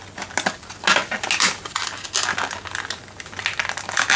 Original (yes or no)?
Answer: yes